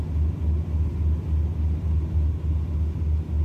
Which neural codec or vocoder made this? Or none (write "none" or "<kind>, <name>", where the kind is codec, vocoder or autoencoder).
none